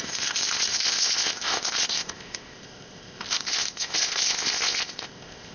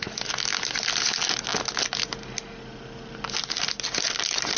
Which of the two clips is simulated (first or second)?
first